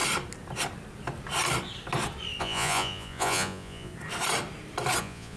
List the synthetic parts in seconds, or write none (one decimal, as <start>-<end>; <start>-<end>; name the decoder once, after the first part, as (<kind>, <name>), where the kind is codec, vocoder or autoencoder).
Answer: 2.4-3.9 (vocoder, Vocos); 5.0-5.4